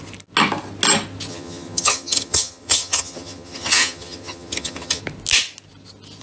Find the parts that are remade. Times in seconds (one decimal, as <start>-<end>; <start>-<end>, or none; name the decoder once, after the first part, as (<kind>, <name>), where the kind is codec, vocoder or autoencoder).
1.3-5.0 (vocoder, HiFi-GAN)